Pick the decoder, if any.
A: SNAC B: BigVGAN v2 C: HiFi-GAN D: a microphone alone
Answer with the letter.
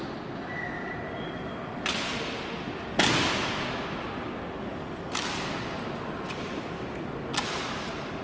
D